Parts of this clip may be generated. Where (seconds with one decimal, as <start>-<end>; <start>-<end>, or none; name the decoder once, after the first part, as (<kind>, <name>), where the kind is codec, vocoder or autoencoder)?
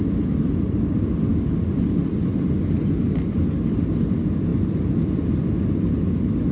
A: none